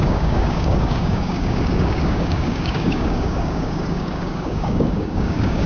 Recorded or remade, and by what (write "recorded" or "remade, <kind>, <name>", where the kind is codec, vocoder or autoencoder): remade, codec, DAC